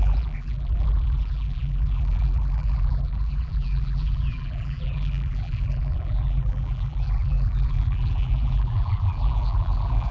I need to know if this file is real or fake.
fake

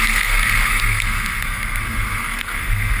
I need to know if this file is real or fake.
fake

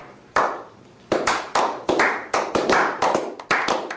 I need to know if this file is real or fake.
fake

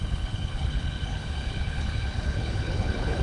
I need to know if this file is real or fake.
fake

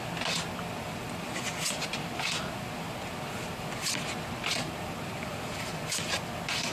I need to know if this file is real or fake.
real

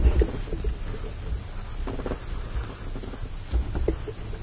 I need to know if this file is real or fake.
real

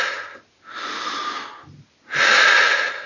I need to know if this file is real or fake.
real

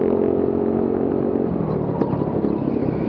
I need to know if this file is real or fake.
real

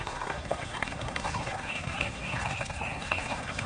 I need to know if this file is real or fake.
fake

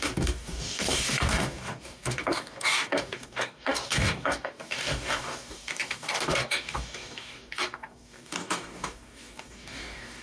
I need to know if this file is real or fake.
fake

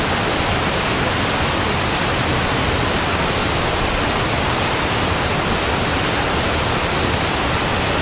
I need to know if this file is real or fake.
real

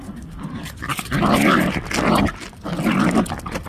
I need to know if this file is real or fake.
real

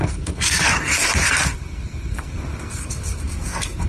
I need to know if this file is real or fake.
fake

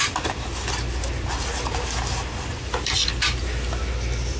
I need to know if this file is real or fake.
real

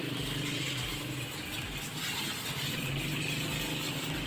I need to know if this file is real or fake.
real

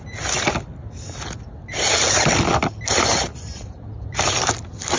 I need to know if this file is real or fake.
real